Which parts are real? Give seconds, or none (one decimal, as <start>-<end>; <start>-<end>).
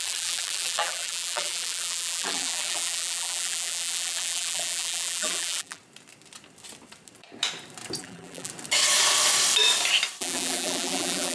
5.8-8.0; 8.5-10.2